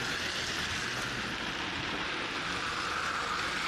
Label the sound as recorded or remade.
recorded